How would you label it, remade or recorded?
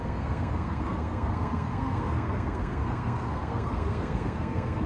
remade